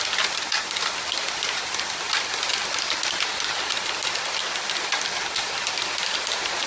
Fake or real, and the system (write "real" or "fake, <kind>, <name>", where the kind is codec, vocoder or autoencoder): real